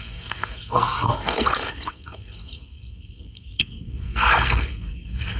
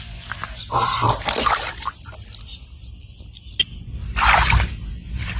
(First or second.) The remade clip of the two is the first